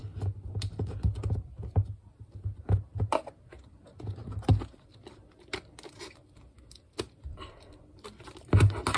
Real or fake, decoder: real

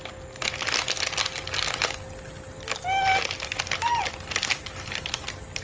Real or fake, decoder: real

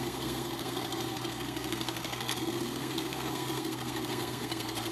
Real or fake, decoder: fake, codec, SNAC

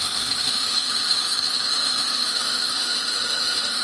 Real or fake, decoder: fake, autoencoder, DAC-VAE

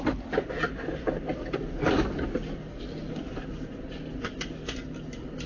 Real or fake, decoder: real